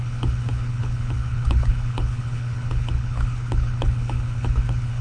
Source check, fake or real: fake